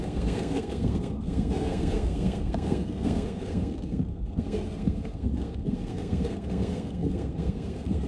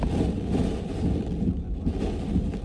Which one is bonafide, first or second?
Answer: second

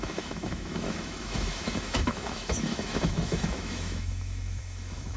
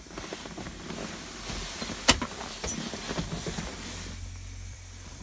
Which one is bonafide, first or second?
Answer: second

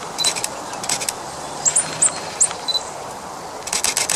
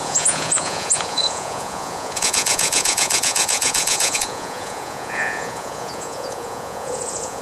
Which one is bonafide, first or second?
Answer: first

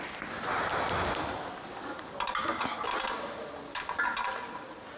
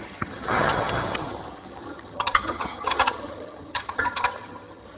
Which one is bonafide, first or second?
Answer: first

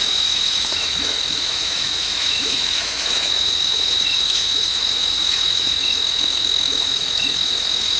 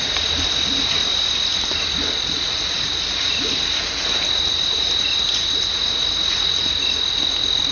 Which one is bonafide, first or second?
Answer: second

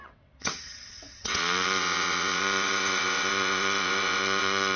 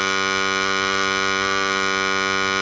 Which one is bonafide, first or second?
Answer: second